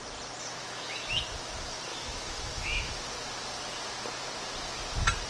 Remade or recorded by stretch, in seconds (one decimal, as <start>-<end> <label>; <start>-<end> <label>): 0.0-0.6 recorded; 0.6-1.2 remade; 1.2-1.9 recorded; 1.9-2.9 remade; 2.9-5.3 recorded